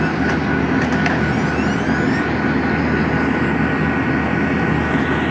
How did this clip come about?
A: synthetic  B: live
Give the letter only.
B